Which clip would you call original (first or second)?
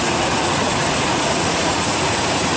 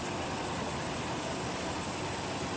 second